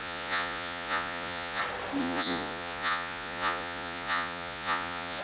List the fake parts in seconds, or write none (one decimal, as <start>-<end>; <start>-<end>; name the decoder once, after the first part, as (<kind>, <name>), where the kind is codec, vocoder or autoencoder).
0.0-1.6 (vocoder, Vocos); 2.0-5.2